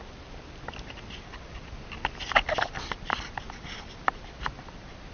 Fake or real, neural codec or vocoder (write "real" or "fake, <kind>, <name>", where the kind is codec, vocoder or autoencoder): real